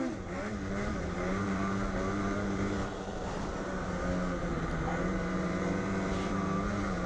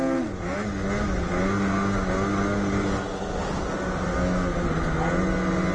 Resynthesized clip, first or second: first